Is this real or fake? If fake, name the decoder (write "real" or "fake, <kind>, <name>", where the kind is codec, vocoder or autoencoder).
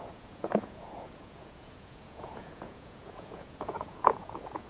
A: fake, vocoder, Vocos